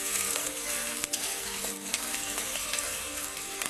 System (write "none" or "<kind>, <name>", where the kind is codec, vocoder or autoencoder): codec, SNAC